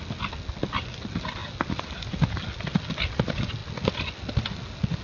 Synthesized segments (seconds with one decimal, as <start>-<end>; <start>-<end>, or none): none